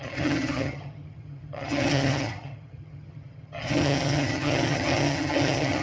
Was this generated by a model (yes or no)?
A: yes